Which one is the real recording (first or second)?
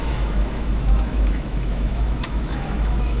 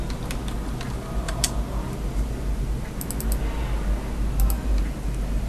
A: second